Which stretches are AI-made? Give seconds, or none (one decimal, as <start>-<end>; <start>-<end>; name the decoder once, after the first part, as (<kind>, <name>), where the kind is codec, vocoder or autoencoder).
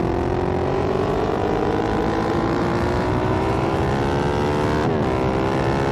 0.6-3.9 (vocoder, BigVGAN v2)